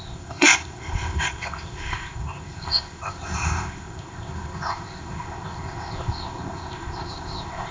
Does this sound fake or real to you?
fake